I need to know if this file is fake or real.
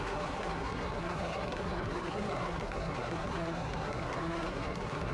fake